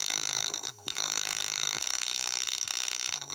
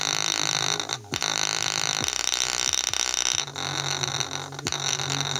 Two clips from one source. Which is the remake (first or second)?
first